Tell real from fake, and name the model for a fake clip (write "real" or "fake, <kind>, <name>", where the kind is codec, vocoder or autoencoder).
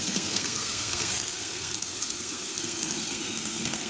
fake, codec, SNAC